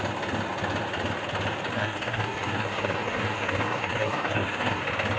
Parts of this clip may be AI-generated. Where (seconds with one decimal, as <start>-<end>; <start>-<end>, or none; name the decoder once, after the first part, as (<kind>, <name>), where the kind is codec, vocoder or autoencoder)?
1.7-4.8 (codec, SNAC)